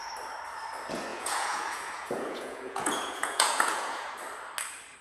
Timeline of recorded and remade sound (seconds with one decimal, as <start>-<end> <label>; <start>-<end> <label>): 0.0-1.1 recorded; 1.1-4.1 remade; 4.1-5.0 recorded